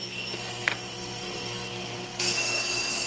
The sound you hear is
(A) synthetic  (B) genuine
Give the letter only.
A